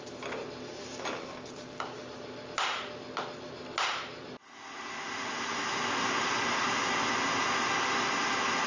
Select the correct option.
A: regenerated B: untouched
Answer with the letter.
B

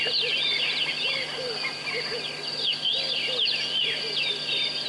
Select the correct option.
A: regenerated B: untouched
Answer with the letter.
B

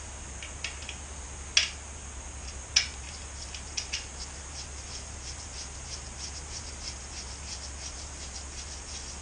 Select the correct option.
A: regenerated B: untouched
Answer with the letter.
B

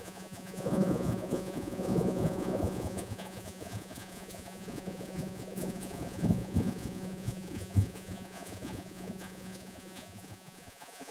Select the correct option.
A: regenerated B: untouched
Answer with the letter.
A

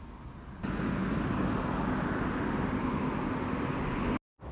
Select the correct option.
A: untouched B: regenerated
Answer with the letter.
A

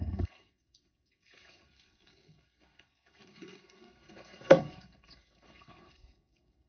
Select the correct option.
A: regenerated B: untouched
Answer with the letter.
A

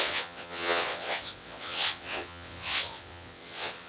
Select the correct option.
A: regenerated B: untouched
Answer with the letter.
A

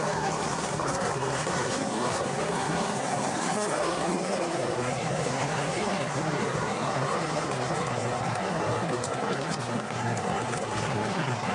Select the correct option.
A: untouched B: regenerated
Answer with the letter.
B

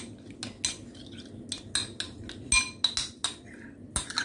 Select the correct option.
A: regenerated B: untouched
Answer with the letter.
B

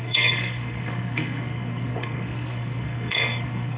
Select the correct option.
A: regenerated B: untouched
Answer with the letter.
A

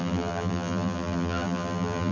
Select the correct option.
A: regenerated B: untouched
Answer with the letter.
A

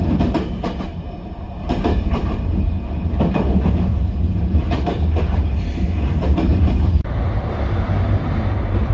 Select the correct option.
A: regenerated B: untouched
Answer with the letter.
A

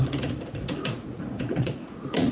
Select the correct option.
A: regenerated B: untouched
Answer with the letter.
A